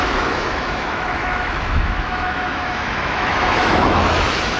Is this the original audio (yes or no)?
no